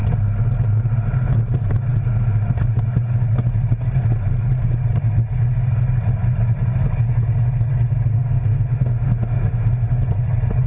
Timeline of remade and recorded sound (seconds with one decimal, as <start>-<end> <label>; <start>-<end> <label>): 0.0-8.1 recorded; 8.1-10.0 remade; 10.0-10.7 recorded

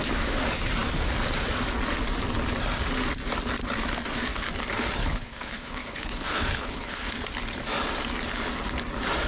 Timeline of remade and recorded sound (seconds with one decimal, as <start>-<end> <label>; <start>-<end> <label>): 0.0-5.0 recorded; 5.0-7.1 remade; 7.1-9.3 recorded

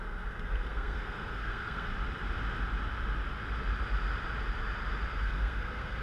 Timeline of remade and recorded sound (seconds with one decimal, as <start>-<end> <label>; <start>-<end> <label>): 0.0-1.9 remade; 1.9-5.2 recorded; 5.2-6.0 remade